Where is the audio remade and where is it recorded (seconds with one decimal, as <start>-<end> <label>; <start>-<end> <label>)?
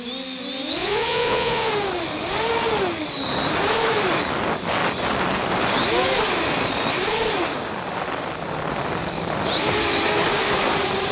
0.0-0.8 recorded; 0.8-1.7 remade; 1.7-11.1 recorded